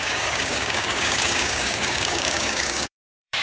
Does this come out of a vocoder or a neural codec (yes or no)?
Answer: yes